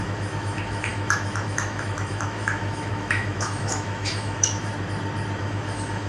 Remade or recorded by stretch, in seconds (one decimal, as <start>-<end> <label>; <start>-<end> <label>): 0.0-4.7 remade; 4.7-5.4 recorded; 5.4-6.1 remade